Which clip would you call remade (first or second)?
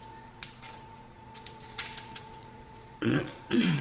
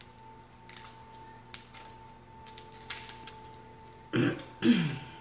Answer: first